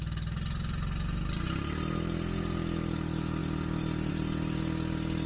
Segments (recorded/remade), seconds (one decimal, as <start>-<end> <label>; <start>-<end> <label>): 0.0-5.3 recorded

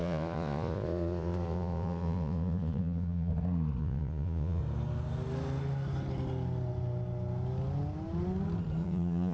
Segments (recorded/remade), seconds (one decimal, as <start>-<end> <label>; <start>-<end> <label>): 0.0-3.3 remade; 3.3-3.8 recorded; 3.8-4.6 remade; 4.6-8.8 recorded; 8.8-9.3 remade

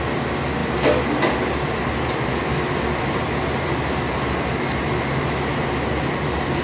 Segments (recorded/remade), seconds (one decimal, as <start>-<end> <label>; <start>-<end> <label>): 0.0-6.6 recorded

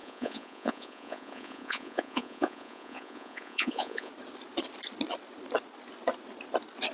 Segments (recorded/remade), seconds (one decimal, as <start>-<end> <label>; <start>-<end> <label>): 0.0-4.1 remade; 4.1-6.9 recorded

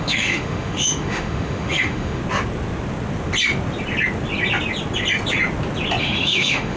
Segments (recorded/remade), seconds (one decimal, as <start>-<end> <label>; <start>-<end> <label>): 0.0-2.2 remade; 2.2-6.0 recorded; 6.0-6.8 remade